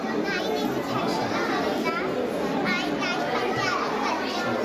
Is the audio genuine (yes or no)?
yes